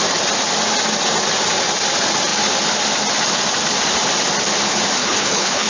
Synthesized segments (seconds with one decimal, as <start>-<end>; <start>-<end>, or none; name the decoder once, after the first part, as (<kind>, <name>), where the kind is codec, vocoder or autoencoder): 5.0-5.7 (codec, HILCodec)